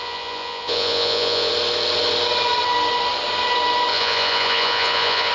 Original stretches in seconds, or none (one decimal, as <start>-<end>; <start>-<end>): 1.5-3.9

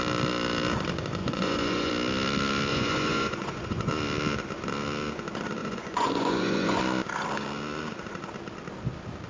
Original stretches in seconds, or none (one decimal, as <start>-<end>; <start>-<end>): 0.0-1.2; 1.9-2.7; 3.9-5.6; 6.8-9.3